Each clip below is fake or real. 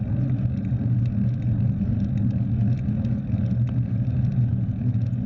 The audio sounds real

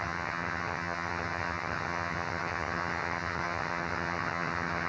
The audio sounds fake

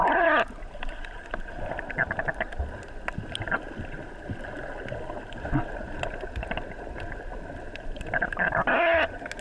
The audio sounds real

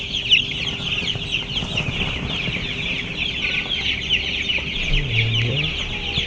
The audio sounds real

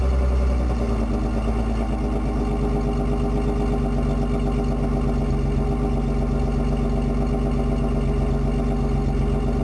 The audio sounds real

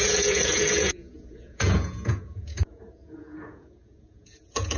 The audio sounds fake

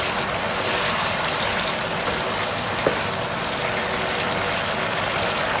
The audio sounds real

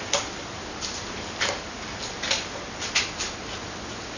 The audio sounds real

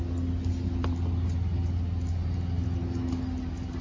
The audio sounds real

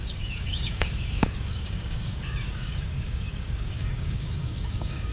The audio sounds fake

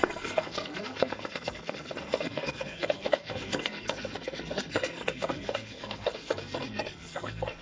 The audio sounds fake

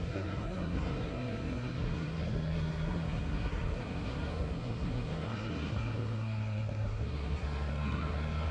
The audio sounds fake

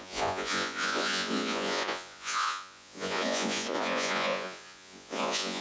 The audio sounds fake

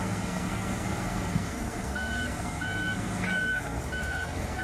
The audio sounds fake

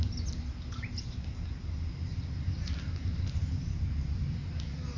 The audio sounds real